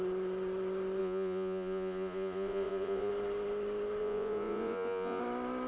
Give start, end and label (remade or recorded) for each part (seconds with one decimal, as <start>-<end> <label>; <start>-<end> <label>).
0.0-1.0 recorded; 1.0-3.1 remade; 3.1-4.0 recorded; 4.0-5.2 remade; 5.2-5.7 recorded